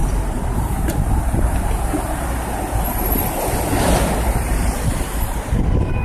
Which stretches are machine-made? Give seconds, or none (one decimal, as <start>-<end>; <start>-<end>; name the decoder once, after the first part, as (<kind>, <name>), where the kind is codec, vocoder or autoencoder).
none